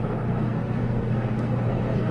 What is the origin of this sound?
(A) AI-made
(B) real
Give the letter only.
A